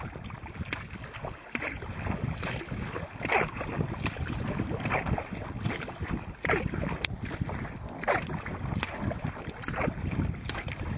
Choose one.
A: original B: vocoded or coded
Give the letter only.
A